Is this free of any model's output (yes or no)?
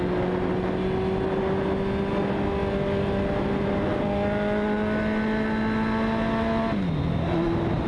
yes